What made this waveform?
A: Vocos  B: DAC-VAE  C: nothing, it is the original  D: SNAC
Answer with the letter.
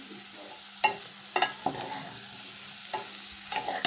C